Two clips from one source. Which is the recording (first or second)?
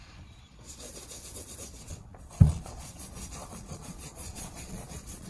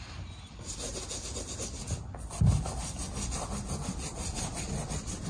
second